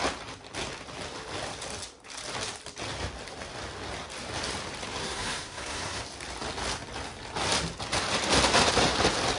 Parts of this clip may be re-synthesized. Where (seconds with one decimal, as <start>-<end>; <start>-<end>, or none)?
5.0-6.0